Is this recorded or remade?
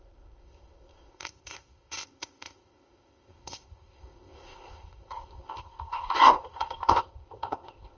remade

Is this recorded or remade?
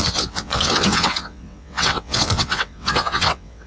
remade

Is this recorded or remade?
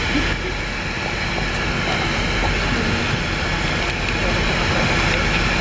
recorded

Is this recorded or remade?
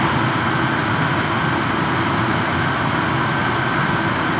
recorded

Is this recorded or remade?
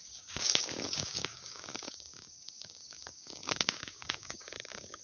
remade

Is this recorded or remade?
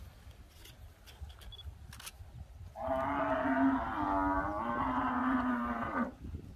recorded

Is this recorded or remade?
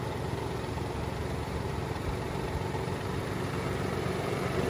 remade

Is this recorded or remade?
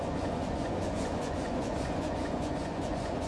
remade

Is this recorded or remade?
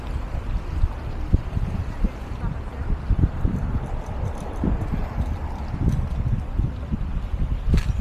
recorded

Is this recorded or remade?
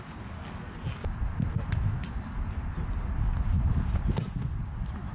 recorded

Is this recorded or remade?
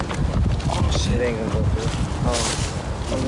recorded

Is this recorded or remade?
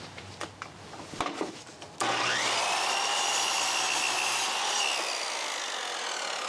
recorded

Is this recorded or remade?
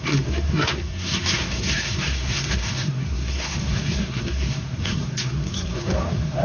remade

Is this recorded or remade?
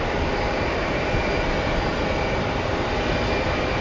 recorded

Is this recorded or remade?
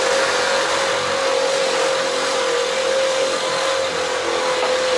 recorded